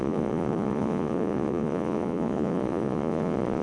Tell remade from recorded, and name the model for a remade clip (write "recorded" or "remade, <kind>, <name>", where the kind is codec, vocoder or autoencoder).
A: remade, vocoder, Vocos